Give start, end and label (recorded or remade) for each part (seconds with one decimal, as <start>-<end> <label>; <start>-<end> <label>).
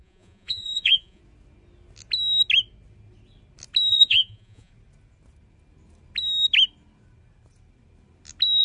0.0-1.2 remade; 1.2-3.9 recorded; 3.9-4.7 remade; 4.7-8.6 recorded